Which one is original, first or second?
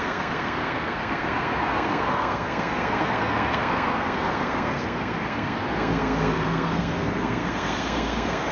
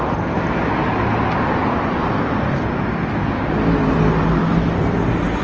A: second